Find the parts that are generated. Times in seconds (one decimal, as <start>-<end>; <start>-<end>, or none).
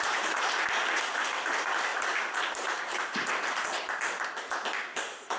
none